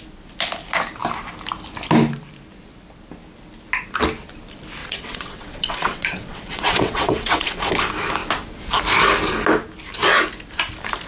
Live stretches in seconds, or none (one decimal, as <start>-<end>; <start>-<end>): 0.0-4.8; 7.7-11.1